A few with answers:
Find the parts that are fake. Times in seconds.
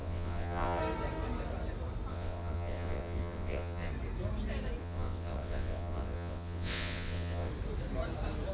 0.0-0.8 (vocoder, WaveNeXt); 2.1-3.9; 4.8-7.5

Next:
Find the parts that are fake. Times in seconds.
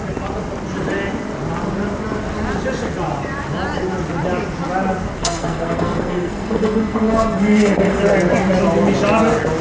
5.2-8.0 (codec, SNAC)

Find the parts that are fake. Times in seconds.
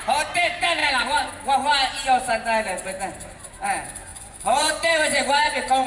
0.8-1.3 (vocoder, Vocos); 4.1-5.9